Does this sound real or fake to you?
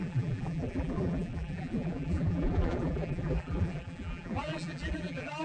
fake